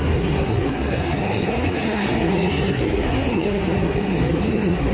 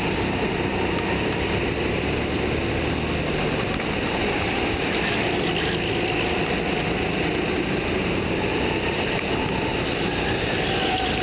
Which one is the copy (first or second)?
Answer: first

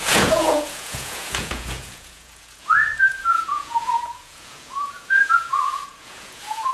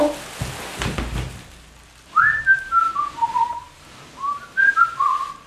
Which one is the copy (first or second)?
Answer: first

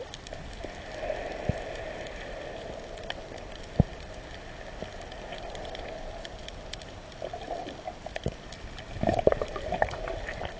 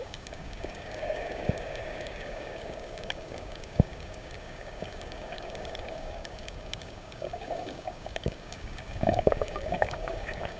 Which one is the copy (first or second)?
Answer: second